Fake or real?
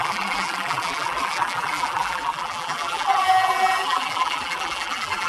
fake